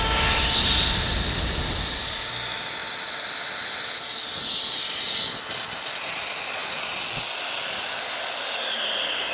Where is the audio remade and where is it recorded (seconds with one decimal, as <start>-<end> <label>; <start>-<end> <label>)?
0.0-9.3 recorded

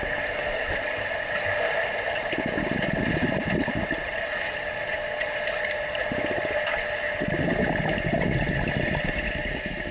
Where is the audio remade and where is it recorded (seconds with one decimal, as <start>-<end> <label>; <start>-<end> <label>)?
0.0-9.9 recorded

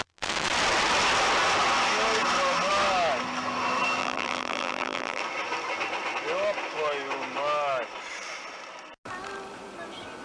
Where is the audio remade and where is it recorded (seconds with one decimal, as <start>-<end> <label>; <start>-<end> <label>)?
0.0-4.0 recorded; 4.0-5.2 remade; 5.2-10.2 recorded

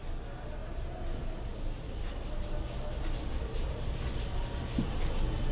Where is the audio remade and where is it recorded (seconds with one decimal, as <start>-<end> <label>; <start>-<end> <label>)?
0.0-5.5 recorded